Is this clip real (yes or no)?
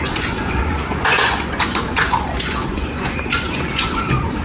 no